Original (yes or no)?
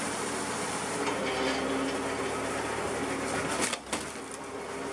yes